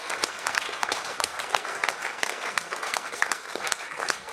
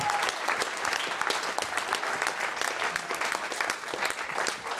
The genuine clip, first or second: second